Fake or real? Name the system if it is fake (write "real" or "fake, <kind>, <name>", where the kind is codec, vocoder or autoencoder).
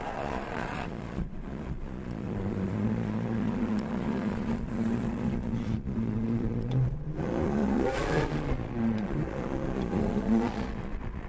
fake, vocoder, Vocos